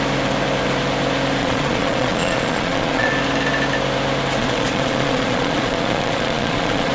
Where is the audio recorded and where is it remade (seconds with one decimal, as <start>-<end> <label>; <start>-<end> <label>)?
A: 0.0-1.4 recorded; 1.4-3.1 remade; 3.1-4.4 recorded; 4.4-6.9 remade

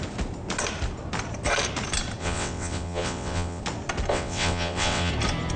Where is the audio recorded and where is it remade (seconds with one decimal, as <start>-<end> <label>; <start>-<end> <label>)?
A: 0.0-2.2 recorded; 2.2-3.6 remade; 3.6-4.1 recorded; 4.1-5.1 remade; 5.1-5.6 recorded

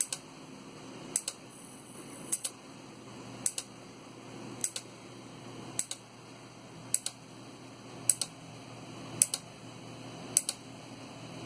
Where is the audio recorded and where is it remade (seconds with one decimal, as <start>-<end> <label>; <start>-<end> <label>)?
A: 0.0-1.5 recorded; 1.5-2.5 remade; 2.5-11.5 recorded

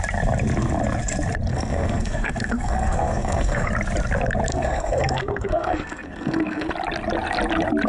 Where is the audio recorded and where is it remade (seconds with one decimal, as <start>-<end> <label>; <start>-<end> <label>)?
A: 0.0-1.5 recorded; 1.5-3.7 remade; 3.7-4.5 recorded; 4.5-6.7 remade; 6.7-7.9 recorded

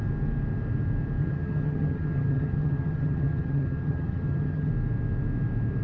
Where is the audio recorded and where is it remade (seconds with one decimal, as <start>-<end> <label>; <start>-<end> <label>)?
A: 0.0-1.2 recorded; 1.2-4.7 remade; 4.7-5.8 recorded

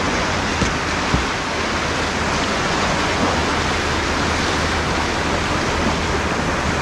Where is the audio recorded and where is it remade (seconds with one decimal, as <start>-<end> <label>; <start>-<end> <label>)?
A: 0.0-0.5 remade; 0.5-2.4 recorded; 2.4-3.4 remade; 3.4-6.8 recorded

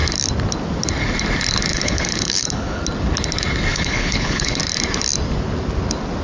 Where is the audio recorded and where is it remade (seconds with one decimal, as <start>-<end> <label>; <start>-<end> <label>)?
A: 0.0-1.7 recorded; 1.7-2.8 remade; 2.8-3.7 recorded; 3.7-4.6 remade; 4.6-6.2 recorded